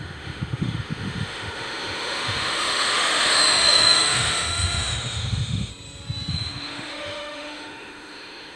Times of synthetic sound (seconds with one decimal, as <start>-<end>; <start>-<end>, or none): 0.0-5.7; 6.3-8.6